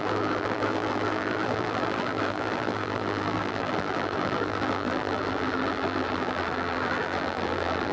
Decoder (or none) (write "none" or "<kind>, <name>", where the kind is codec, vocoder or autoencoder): vocoder, BigVGAN v2